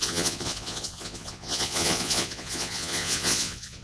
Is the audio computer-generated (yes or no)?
yes